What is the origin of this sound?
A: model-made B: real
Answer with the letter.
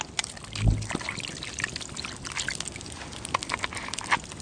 B